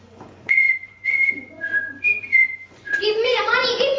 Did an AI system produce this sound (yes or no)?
yes